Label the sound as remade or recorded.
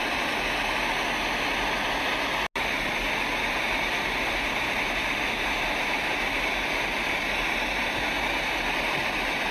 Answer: recorded